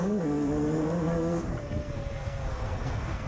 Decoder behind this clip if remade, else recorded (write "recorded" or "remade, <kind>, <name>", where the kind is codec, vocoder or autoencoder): remade, codec, SNAC